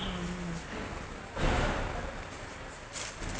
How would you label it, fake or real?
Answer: real